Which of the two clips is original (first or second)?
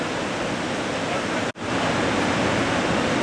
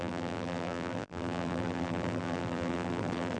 first